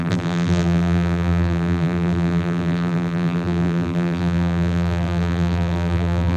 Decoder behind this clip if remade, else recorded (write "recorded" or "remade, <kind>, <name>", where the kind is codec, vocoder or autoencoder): remade, vocoder, BigVGAN v2